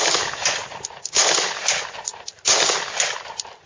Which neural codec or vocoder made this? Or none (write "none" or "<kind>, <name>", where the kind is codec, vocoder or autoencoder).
none